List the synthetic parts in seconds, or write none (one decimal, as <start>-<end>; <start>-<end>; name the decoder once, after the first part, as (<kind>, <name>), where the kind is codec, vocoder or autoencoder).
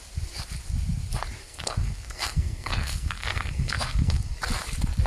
1.4-4.4 (codec, SNAC)